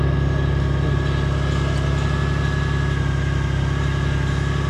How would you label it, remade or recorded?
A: recorded